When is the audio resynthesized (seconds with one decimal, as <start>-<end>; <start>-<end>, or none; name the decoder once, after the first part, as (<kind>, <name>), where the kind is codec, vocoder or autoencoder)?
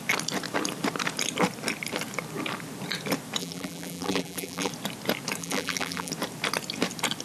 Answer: 3.4-4.7 (vocoder, BigVGAN v2); 5.4-6.1